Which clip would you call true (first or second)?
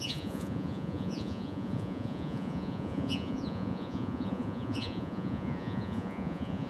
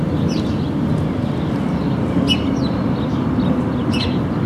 second